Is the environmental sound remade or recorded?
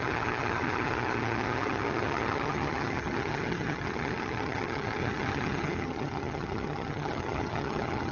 remade